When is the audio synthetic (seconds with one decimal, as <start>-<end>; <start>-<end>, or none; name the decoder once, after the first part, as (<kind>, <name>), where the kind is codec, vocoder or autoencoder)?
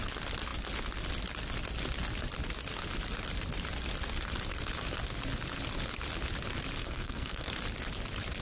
6.8-7.5 (codec, SNAC)